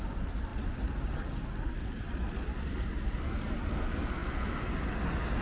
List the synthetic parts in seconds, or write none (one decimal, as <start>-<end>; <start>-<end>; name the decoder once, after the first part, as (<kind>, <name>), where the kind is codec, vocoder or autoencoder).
none